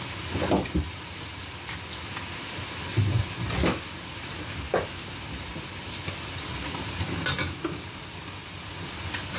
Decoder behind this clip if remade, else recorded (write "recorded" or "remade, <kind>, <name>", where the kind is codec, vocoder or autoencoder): recorded